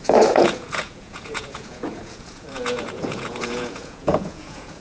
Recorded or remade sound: remade